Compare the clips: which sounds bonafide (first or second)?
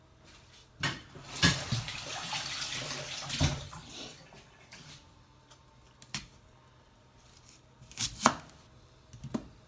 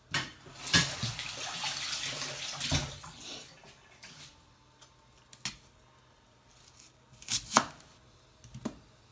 second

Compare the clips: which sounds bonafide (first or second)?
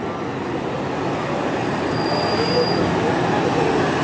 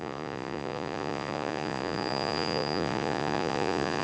first